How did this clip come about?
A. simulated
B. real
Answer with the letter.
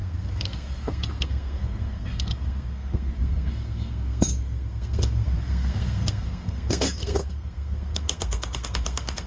A